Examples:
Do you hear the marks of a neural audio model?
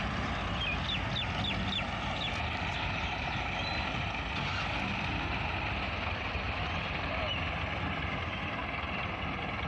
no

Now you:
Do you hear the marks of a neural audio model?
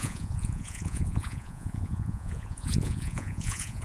yes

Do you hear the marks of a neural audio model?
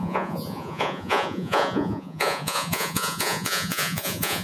yes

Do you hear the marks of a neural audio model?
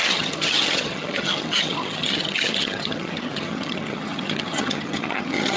yes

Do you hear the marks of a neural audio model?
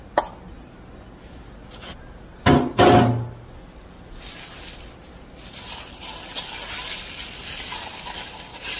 no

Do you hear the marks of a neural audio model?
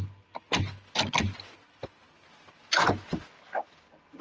no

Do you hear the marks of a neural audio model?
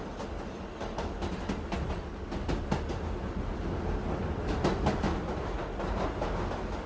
no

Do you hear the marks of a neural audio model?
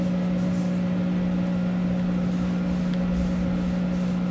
no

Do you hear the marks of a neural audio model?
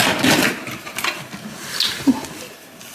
no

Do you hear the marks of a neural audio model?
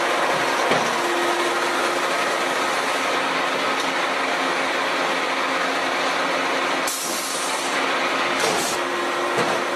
no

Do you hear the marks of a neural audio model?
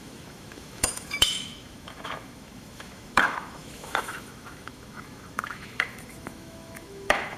yes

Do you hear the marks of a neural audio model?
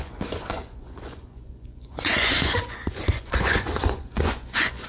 yes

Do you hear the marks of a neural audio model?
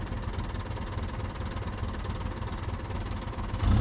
no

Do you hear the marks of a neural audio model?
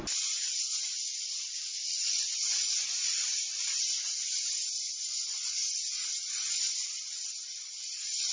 yes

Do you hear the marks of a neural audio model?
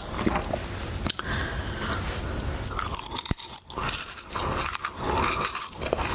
no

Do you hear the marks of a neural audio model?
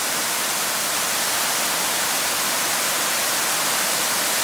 no